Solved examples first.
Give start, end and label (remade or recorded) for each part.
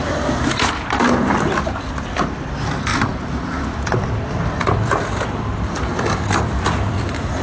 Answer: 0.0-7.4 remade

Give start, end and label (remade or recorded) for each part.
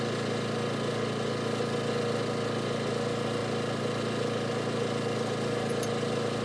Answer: 0.0-6.4 recorded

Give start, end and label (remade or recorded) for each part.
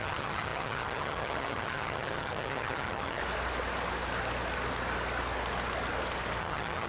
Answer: 0.0-3.2 remade; 3.2-6.4 recorded; 6.4-6.9 remade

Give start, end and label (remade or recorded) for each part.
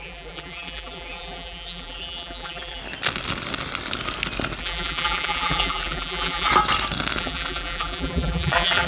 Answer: 0.0-2.8 remade; 2.8-4.6 recorded; 4.6-6.5 remade; 6.5-7.2 recorded; 7.2-8.9 remade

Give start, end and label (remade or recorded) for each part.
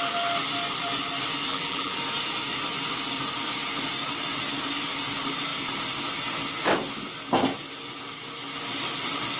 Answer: 0.0-1.5 recorded; 1.5-2.0 remade; 2.0-9.4 recorded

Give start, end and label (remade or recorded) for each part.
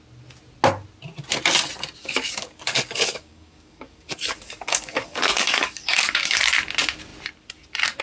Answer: 0.0-2.0 recorded; 2.0-6.4 remade; 6.4-8.0 recorded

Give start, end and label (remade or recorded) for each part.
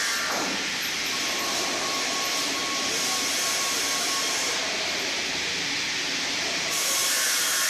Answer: 0.0-7.7 recorded